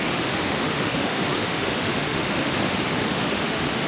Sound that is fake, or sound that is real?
fake